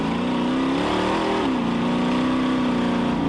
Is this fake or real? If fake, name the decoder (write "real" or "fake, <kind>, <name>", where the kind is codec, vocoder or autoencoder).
real